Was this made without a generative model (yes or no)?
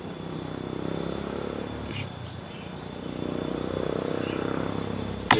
yes